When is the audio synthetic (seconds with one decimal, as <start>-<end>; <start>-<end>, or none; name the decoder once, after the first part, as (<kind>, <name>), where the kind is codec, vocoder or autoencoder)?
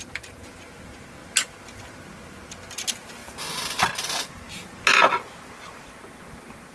none